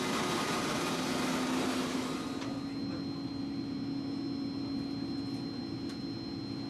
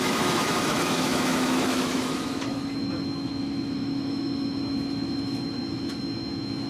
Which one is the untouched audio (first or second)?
first